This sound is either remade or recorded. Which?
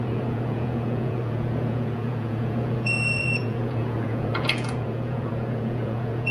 remade